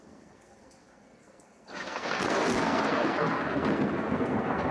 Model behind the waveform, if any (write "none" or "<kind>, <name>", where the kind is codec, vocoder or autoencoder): codec, SNAC